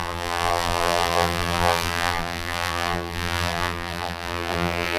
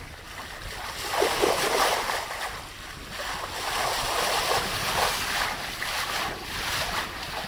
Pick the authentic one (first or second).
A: second